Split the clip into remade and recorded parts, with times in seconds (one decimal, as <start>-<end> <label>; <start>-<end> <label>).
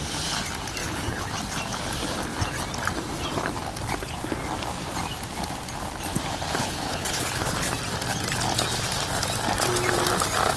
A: 0.0-0.8 recorded; 0.8-1.3 remade; 1.3-6.6 recorded; 6.6-7.7 remade; 7.7-10.6 recorded